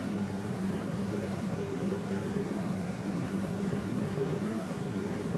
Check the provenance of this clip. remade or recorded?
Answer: remade